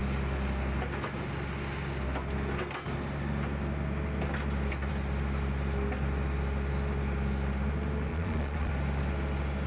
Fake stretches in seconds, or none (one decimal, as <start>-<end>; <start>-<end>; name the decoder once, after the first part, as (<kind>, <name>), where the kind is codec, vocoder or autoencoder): 8.1-8.7 (vocoder, Vocos)